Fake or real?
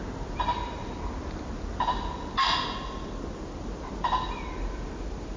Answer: real